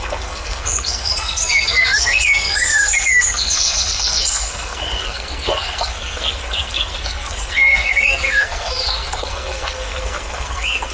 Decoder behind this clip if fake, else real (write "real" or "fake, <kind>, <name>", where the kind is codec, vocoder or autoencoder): fake, codec, SNAC